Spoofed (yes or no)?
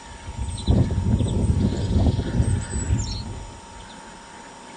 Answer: no